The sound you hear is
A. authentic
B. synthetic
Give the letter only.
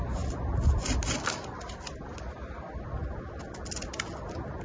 A